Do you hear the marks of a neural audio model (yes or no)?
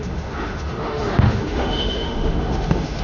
yes